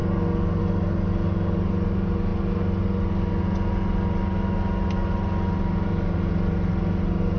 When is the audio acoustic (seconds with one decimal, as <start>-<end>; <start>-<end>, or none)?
0.0-7.4